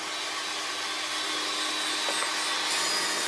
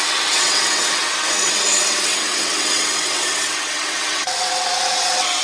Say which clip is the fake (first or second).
second